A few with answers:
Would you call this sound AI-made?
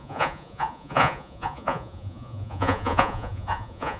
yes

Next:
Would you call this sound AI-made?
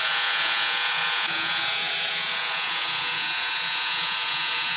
yes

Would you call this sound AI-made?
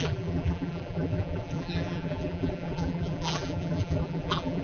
yes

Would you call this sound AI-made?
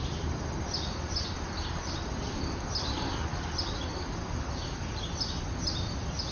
no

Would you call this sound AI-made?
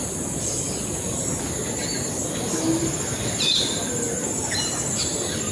no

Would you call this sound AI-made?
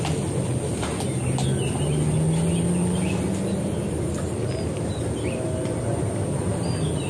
no